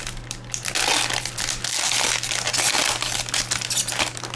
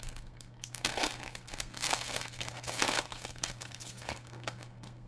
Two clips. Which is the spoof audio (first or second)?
second